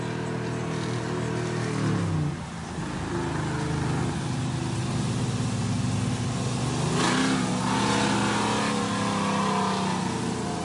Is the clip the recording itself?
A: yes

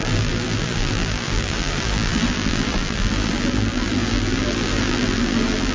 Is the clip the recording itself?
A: no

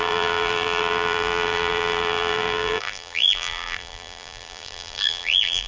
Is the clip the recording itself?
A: no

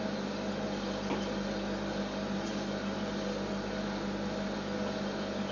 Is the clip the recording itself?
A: yes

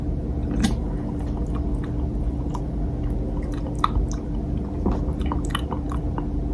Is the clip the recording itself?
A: yes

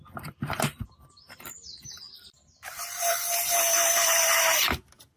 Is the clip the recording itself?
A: no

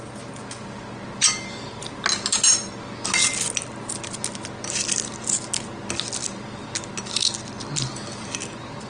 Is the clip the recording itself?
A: yes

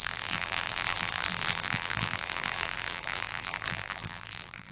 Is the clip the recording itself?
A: no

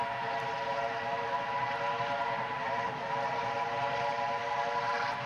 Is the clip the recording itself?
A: yes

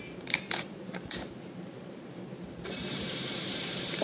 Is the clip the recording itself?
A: no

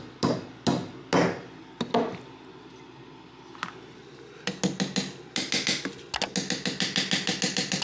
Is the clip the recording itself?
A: yes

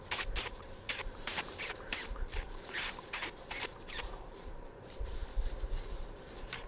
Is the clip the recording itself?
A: no